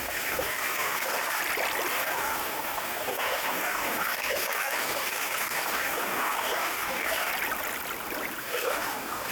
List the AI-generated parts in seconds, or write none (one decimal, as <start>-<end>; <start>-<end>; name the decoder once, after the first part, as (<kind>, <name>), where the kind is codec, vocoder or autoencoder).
0.0-1.4 (codec, DAC); 1.9-7.3; 8.4-9.3